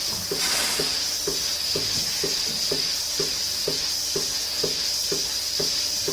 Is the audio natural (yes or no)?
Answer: yes